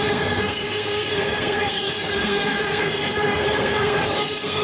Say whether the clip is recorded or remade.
remade